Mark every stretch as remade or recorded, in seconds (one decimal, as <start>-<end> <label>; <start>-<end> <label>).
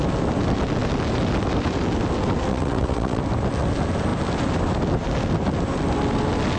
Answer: 0.0-2.5 recorded; 2.5-3.2 remade; 3.2-6.6 recorded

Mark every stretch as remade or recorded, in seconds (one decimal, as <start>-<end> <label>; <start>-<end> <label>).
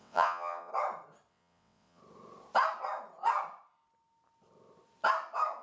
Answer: 0.0-0.7 remade; 0.7-1.3 recorded; 1.3-2.0 remade; 2.0-5.6 recorded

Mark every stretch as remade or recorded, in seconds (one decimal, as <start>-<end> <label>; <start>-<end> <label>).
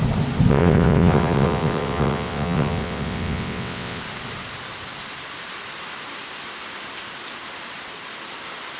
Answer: 0.0-0.5 recorded; 0.5-4.0 remade; 4.0-8.8 recorded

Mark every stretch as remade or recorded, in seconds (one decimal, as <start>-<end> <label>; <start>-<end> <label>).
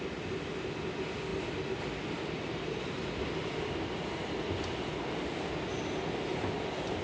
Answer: 0.0-7.0 recorded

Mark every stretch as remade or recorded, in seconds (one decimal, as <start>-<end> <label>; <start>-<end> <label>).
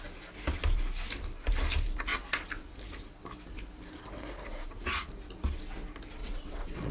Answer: 0.0-6.2 recorded; 6.2-6.9 remade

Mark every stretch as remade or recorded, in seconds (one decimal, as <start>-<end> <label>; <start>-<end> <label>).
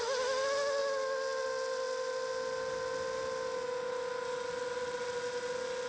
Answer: 0.0-5.9 recorded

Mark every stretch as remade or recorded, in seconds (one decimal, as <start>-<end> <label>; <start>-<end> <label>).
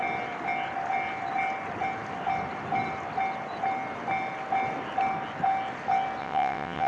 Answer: 0.0-6.2 recorded; 6.2-6.9 remade